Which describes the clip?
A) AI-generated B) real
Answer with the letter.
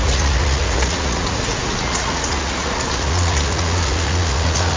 A